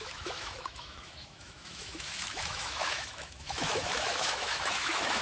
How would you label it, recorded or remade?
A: remade